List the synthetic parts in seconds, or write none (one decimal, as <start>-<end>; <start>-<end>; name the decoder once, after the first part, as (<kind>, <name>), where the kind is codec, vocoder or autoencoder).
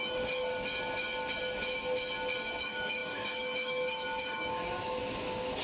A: 0.0-0.5 (autoencoder, DAC-VAE); 2.6-5.0